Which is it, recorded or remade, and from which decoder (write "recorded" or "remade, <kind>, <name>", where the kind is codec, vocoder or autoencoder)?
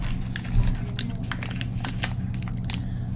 recorded